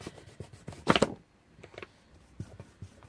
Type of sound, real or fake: real